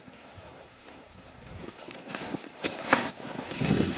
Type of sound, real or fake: fake